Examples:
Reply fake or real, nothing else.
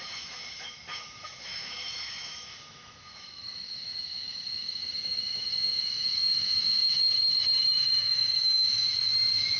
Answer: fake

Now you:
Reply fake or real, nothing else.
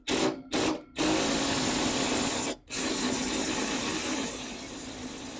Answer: real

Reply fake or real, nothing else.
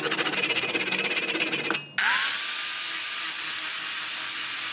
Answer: real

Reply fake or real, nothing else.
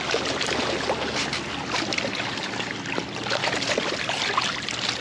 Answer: real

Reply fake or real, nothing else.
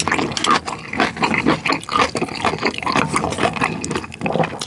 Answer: real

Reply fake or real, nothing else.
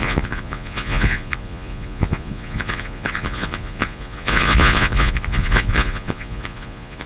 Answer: fake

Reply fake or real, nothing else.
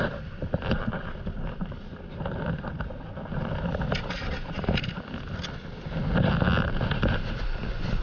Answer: real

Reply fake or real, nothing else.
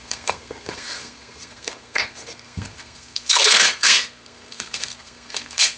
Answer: fake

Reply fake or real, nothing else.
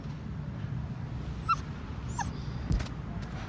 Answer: real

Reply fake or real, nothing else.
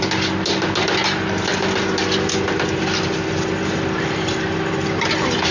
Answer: real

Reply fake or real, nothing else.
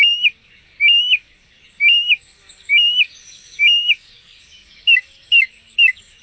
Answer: fake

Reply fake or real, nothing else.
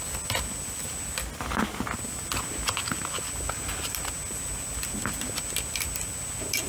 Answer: real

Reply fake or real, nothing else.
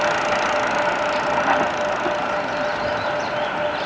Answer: real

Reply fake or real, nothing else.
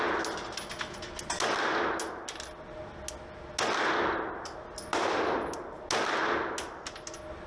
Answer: real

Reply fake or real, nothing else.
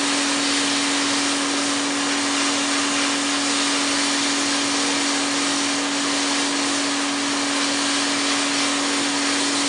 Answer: real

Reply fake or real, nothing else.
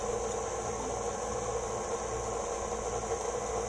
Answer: real